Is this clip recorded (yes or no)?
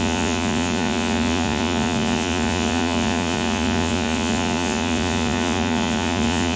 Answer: no